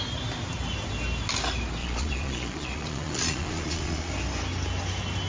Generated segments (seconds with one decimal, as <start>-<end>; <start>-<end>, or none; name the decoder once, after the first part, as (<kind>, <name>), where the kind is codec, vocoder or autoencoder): 1.8-4.1 (vocoder, Vocos)